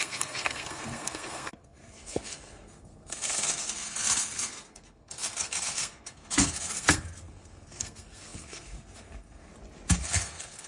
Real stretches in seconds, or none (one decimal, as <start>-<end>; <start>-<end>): 9.5-10.0